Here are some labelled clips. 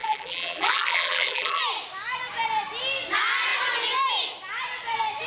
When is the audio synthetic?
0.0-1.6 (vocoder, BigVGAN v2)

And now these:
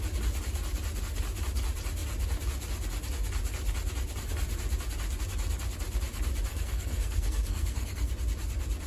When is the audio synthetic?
6.5-8.1 (codec, SNAC)

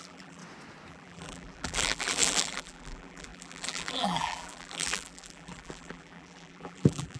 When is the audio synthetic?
0.0-0.4 (vocoder, BigVGAN v2); 0.9-7.2

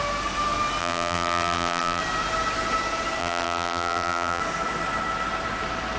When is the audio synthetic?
0.8-2.0 (vocoder, BigVGAN v2); 3.2-4.4

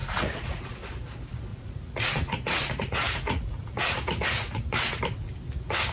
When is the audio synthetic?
0.0-0.6 (vocoder, Vocos); 1.5-5.0

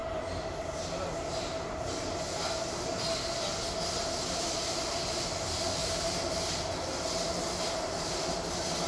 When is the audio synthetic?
5.8-6.6 (vocoder, BigVGAN v2)

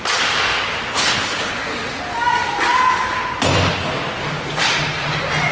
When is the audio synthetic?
0.9-1.5 (codec, HILCodec)

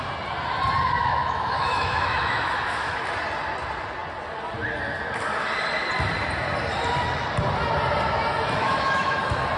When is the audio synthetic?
1.0-3.0 (autoencoder, DAC-VAE); 8.6-9.2